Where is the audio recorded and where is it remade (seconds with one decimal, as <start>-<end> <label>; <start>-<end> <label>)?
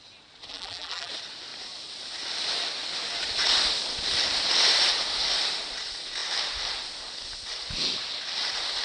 0.0-0.5 recorded; 0.5-1.1 remade; 1.1-8.8 recorded